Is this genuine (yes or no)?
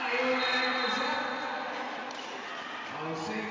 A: yes